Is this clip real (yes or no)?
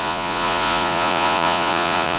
no